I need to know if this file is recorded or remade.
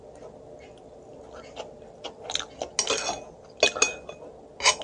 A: recorded